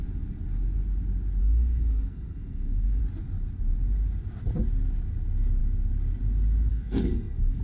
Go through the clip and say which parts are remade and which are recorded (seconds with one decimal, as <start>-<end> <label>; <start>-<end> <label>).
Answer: 0.0-1.4 recorded; 1.4-3.0 remade; 3.0-6.7 recorded; 6.7-7.6 remade